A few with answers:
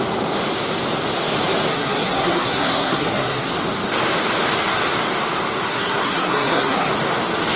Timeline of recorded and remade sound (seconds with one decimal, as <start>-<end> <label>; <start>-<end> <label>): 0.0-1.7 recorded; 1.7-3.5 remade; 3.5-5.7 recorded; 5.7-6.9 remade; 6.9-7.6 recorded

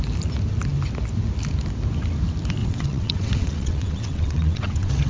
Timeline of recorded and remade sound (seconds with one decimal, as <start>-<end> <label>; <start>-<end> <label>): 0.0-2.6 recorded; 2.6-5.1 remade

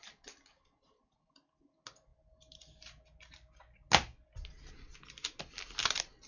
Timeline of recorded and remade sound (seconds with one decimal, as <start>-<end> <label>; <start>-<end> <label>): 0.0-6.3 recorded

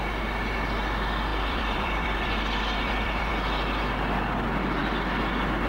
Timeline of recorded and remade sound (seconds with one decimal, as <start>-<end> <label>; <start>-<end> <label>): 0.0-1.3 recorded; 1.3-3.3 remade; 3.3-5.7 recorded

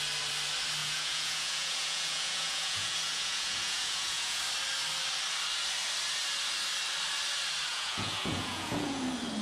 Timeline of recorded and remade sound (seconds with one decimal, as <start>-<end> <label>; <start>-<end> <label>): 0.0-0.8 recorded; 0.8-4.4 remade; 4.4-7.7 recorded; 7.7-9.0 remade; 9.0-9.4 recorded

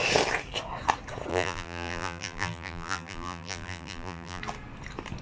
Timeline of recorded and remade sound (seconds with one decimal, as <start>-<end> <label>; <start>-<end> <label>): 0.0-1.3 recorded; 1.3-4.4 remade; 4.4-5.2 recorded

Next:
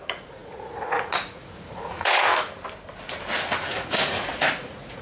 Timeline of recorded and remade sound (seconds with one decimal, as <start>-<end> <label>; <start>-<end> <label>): 0.0-2.3 remade; 2.3-3.6 recorded; 3.6-5.0 remade

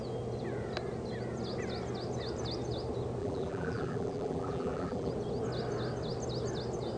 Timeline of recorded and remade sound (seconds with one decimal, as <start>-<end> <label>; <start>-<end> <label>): 0.0-3.2 recorded; 3.2-5.1 remade; 5.1-7.0 recorded